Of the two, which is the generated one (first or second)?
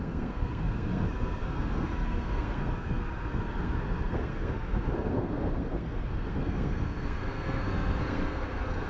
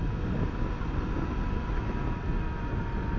first